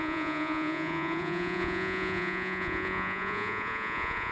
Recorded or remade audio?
remade